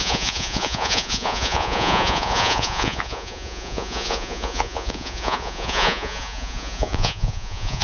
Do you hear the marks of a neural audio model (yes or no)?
yes